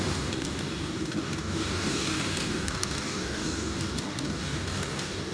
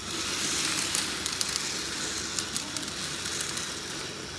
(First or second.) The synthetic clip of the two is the first